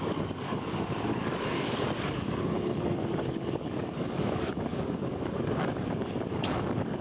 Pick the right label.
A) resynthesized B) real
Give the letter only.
A